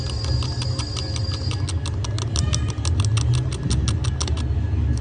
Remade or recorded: recorded